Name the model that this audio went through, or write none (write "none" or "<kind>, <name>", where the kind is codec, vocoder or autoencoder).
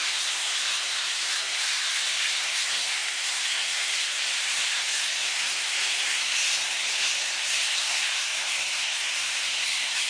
codec, SNAC